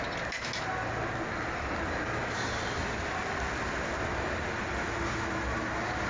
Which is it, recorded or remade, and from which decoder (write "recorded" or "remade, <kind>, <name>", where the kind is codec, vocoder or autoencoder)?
recorded